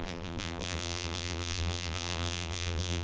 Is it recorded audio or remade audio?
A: remade